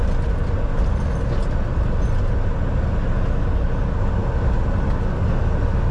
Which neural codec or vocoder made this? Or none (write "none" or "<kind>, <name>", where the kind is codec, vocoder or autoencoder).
none